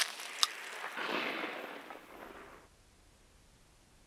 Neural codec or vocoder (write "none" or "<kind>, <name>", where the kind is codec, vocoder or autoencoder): none